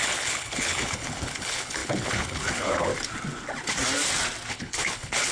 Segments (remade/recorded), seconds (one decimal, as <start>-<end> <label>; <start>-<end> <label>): 0.0-2.9 remade; 2.9-4.5 recorded; 4.5-5.3 remade